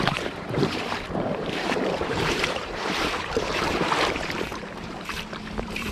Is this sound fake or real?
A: fake